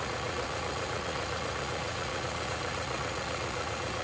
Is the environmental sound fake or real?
fake